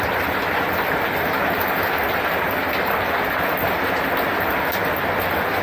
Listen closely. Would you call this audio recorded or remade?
recorded